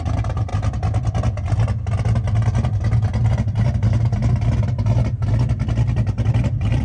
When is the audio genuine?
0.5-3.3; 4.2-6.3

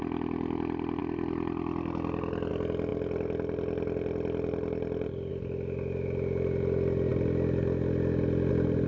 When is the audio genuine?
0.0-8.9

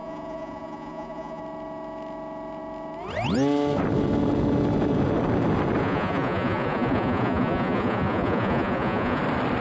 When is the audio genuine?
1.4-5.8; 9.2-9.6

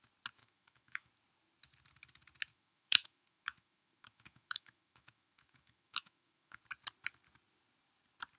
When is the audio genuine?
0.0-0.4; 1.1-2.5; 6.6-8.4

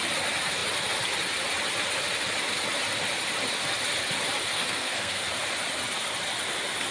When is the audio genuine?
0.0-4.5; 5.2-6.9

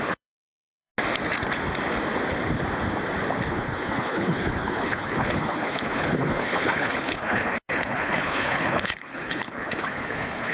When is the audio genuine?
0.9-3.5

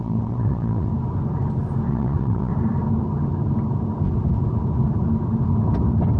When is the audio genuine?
0.9-1.9; 2.5-6.2